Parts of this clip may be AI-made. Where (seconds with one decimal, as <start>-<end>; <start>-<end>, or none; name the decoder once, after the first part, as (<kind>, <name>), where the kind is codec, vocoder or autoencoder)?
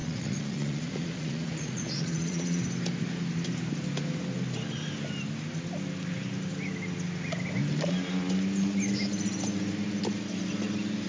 0.0-2.6 (vocoder, Vocos)